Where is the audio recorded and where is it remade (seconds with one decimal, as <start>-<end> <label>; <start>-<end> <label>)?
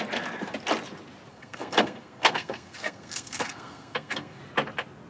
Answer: 0.0-1.3 recorded; 1.3-4.4 remade; 4.4-5.1 recorded